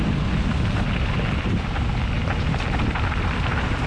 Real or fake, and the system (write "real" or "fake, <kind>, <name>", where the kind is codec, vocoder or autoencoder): real